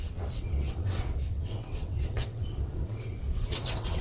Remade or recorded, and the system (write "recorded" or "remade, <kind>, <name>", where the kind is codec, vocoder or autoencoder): remade, vocoder, WaveNeXt